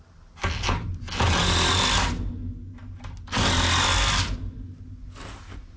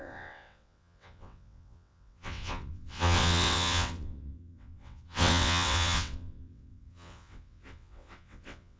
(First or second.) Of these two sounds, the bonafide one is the first